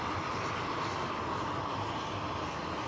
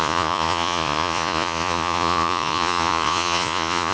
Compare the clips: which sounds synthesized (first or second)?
second